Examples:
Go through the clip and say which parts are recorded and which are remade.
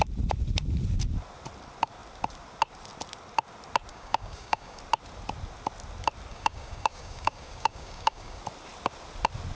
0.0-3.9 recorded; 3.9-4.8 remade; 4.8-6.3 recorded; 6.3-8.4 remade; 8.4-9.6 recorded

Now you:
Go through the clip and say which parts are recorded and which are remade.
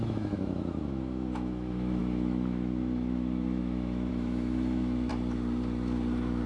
0.0-5.1 remade; 5.1-6.5 recorded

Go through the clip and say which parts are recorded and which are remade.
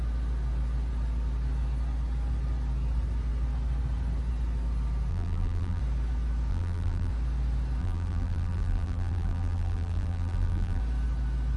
0.0-5.1 recorded; 5.1-5.8 remade; 5.8-6.5 recorded; 6.5-7.1 remade; 7.1-7.8 recorded; 7.8-10.8 remade; 10.8-11.6 recorded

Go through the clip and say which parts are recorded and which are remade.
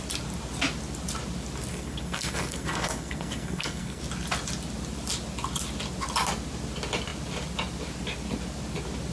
0.0-1.7 recorded; 1.7-4.0 remade; 4.0-9.1 recorded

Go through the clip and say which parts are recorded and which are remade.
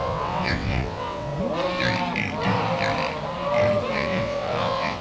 0.0-1.3 remade; 1.3-3.9 recorded; 3.9-5.0 remade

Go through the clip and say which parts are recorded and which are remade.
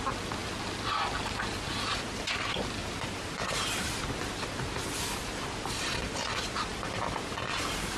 0.0-2.8 recorded; 2.8-4.0 remade; 4.0-8.0 recorded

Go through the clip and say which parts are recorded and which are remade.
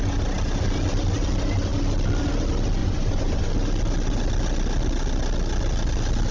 0.0-2.8 recorded; 2.8-3.5 remade; 3.5-6.3 recorded